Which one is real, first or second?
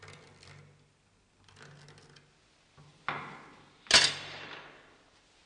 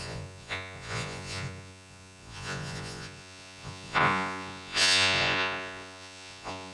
first